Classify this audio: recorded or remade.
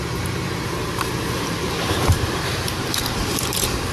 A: remade